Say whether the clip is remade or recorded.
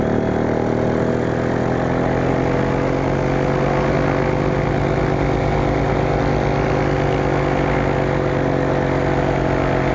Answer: recorded